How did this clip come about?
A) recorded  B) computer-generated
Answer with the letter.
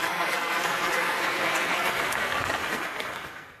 B